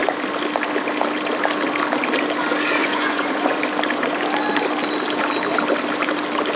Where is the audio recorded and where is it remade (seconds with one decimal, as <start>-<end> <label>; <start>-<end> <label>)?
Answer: 0.0-2.8 recorded; 2.8-3.6 remade; 3.6-6.6 recorded